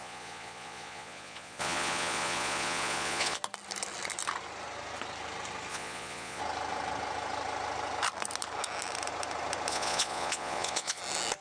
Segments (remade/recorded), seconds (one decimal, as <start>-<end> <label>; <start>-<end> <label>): 0.0-3.4 remade; 3.4-5.7 recorded; 5.7-6.4 remade; 6.4-9.7 recorded; 9.7-11.0 remade; 11.0-11.4 recorded